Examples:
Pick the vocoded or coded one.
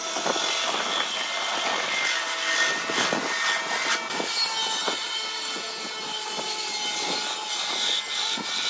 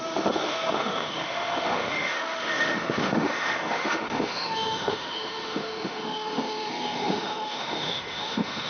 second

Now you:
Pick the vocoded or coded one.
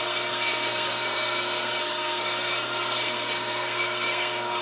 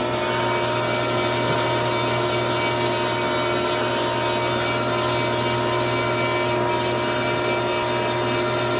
first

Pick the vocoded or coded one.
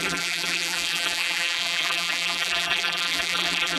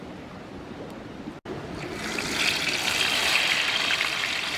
first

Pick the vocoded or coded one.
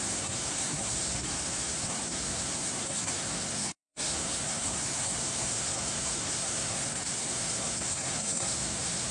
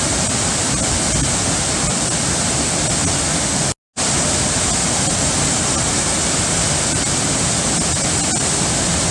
first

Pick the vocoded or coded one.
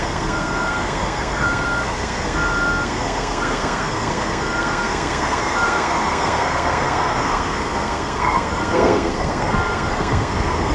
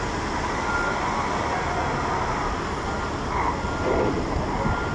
first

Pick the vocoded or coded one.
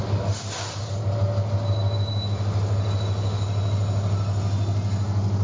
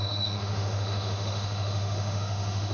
second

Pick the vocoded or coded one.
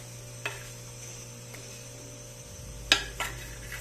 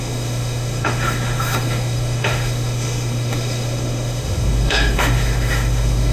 second